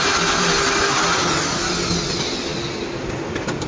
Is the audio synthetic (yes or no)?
no